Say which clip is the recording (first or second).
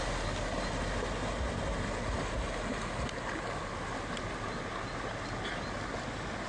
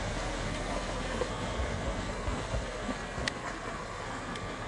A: first